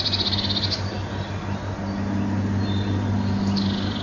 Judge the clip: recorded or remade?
recorded